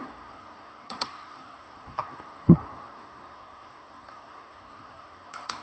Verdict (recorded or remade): remade